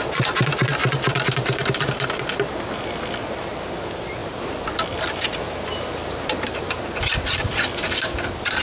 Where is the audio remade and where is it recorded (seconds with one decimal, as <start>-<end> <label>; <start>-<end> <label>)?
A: 0.0-0.8 recorded; 0.8-2.2 remade; 2.2-4.2 recorded; 4.2-8.6 remade